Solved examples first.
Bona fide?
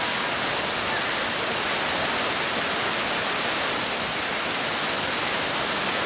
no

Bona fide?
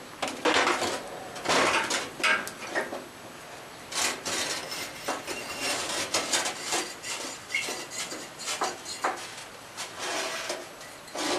yes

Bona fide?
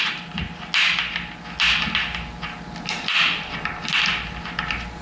yes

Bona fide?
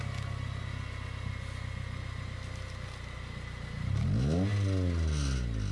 yes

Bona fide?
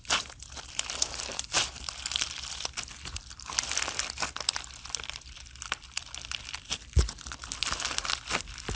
no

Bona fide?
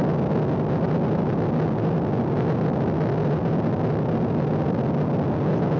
yes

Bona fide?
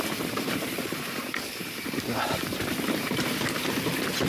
no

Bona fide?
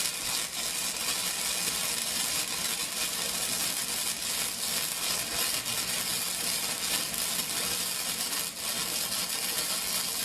yes